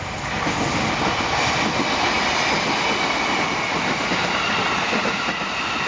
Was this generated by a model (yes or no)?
no